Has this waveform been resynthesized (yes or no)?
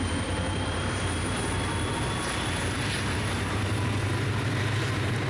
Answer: yes